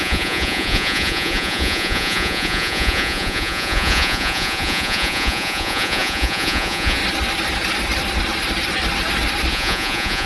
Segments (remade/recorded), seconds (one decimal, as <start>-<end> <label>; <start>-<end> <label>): 0.0-7.0 remade; 7.0-9.5 recorded; 9.5-10.3 remade